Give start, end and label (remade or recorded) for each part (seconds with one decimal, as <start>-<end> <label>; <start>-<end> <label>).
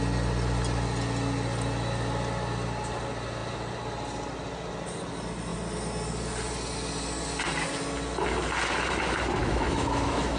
0.0-9.4 recorded; 9.4-10.4 remade